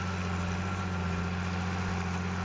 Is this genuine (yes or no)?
yes